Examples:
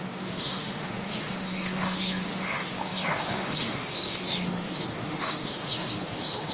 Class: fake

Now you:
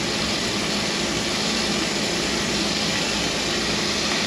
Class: real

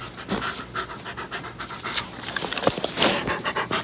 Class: real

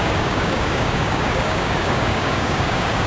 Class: fake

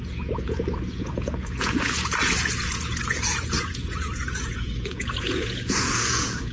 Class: fake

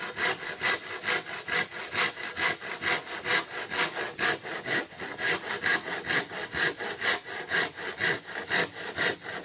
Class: real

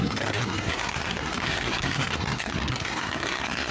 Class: fake